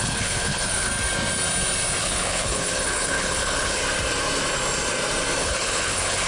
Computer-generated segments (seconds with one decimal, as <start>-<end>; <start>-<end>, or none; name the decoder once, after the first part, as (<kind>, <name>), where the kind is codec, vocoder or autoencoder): 0.0-0.9 (codec, HILCodec); 2.0-3.8; 5.4-6.3